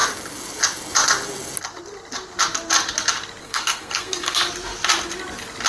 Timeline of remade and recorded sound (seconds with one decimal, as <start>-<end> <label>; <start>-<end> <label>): 0.0-3.4 recorded; 3.4-4.4 remade; 4.4-5.7 recorded